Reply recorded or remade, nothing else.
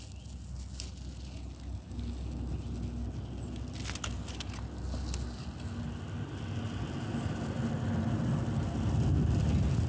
recorded